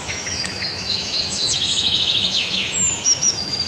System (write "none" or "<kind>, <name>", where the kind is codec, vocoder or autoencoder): autoencoder, DAC-VAE